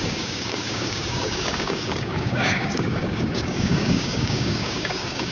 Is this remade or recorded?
remade